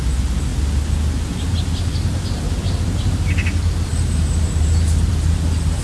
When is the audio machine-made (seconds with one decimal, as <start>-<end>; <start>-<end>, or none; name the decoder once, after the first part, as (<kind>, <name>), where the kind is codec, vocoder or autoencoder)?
3.9-5.1 (vocoder, BigVGAN v2)